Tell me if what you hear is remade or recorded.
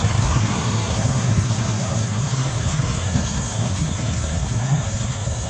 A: remade